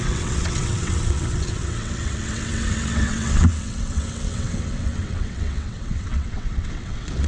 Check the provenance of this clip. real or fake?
fake